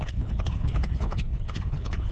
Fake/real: fake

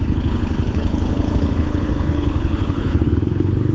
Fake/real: fake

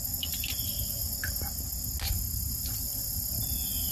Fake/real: real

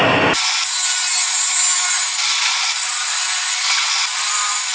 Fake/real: real